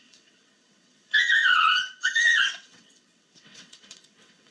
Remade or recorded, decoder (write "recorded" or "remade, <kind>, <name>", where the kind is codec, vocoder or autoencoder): remade, vocoder, WaveNeXt